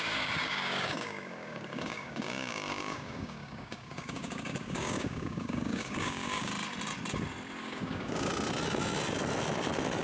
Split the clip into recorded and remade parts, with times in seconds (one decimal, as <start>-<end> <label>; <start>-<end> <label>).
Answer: 0.0-6.5 remade; 6.5-7.6 recorded; 7.6-8.3 remade; 8.3-10.0 recorded